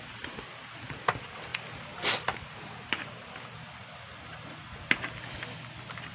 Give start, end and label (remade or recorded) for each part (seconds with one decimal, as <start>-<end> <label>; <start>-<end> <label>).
0.0-6.1 recorded